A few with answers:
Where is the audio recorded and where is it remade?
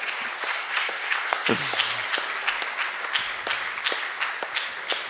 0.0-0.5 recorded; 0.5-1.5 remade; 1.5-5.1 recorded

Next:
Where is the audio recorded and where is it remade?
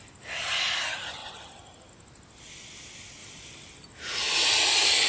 0.0-1.2 recorded; 1.2-1.9 remade; 1.9-5.1 recorded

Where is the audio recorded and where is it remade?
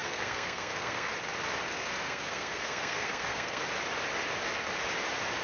0.0-1.1 remade; 1.1-1.7 recorded; 1.7-3.6 remade; 3.6-5.4 recorded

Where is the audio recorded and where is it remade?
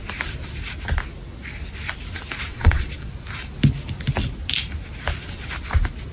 0.0-2.5 recorded; 2.5-3.1 remade; 3.1-6.1 recorded